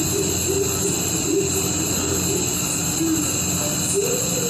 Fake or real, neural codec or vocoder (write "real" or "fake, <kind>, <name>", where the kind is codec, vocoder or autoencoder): real